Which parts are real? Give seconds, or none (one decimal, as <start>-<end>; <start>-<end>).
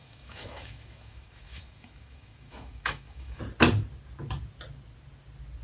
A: 3.4-5.6